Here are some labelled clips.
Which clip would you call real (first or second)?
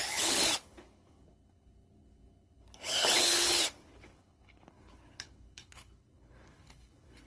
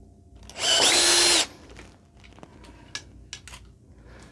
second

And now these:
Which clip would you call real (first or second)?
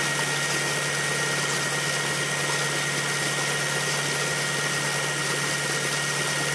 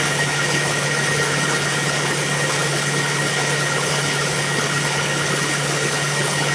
first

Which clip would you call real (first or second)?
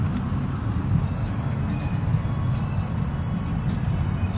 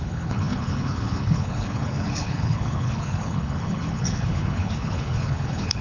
first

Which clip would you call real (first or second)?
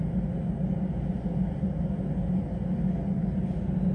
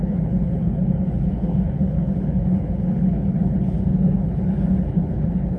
first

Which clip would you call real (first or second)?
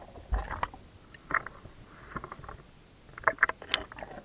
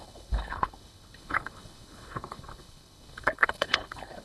first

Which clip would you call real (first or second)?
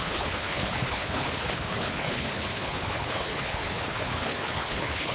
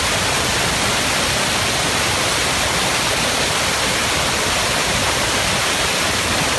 second